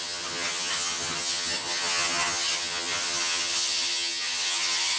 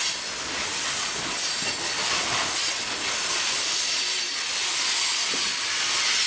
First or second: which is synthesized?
first